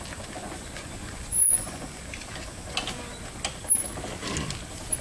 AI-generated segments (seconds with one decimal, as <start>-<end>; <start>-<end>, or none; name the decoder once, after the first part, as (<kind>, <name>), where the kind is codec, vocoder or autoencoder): 0.4-2.0 (vocoder, Vocos)